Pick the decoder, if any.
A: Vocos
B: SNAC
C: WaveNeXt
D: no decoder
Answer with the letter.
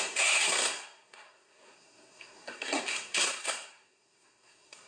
B